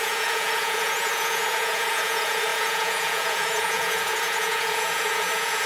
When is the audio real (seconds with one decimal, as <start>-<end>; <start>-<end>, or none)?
none